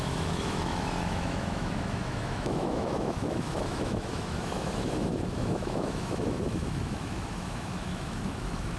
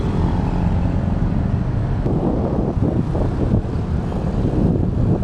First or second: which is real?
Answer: second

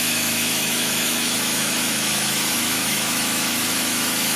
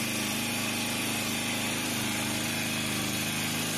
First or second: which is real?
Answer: second